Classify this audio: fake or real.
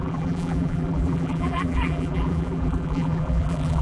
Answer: fake